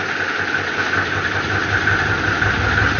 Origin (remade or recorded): recorded